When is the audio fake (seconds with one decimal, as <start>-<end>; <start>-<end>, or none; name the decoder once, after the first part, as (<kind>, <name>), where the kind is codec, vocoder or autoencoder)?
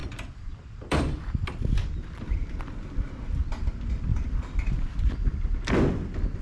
0.0-3.4 (vocoder, BigVGAN v2); 4.1-5.4